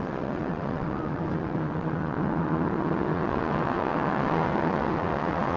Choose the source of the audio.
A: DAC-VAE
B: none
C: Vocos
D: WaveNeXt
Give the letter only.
D